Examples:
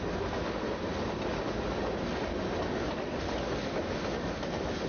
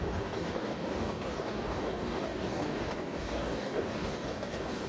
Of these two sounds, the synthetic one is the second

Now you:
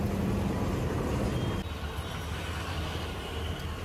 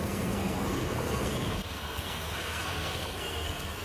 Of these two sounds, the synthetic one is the second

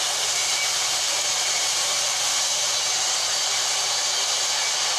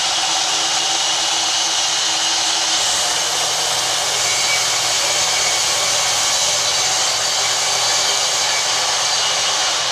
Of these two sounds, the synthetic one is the first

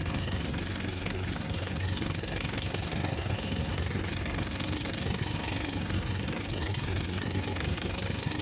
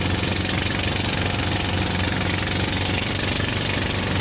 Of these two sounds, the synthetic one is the first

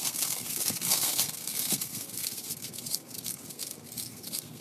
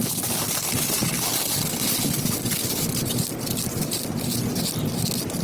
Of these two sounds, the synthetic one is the first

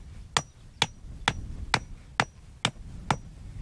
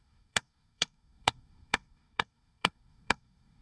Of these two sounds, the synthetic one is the second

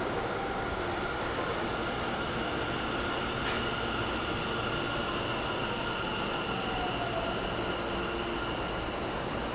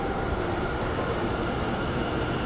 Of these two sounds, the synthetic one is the second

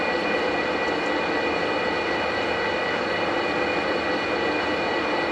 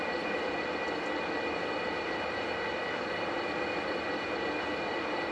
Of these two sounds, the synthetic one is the second